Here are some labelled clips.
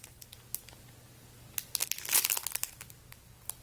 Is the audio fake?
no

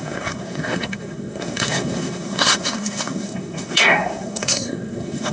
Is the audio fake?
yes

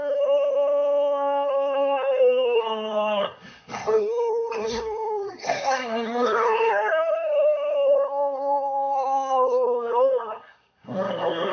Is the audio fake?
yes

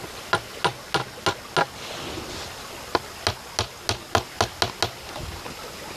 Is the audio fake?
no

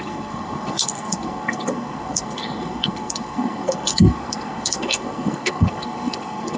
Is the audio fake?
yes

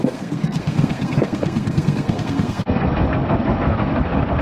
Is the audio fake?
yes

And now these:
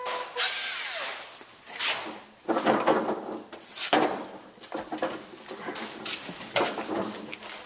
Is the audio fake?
no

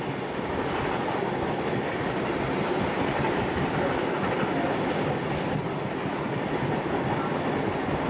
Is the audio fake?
no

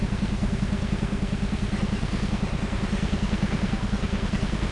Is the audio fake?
yes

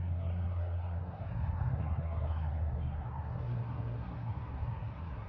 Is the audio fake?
yes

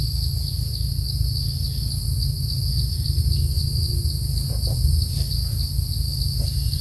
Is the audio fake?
no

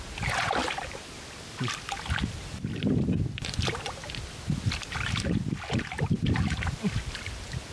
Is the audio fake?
no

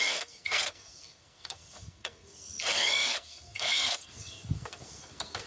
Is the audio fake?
yes